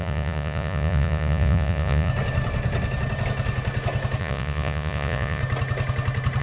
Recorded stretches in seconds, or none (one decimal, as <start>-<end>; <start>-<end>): 2.1-4.2; 5.4-6.4